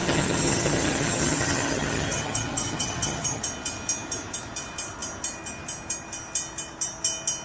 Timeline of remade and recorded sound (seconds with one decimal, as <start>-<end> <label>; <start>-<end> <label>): 0.0-3.4 remade; 3.4-7.4 recorded